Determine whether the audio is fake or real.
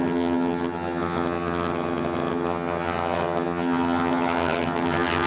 fake